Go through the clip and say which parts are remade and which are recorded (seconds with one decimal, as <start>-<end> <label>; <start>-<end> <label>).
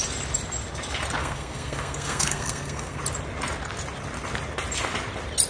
0.0-1.2 recorded; 1.2-3.0 remade; 3.0-5.5 recorded